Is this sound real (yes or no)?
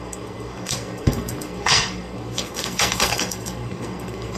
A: no